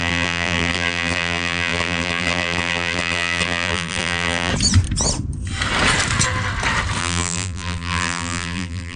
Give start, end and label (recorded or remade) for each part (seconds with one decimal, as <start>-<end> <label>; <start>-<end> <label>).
0.0-4.5 remade; 4.5-7.0 recorded; 7.0-9.0 remade